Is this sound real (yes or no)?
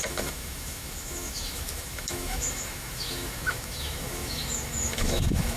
no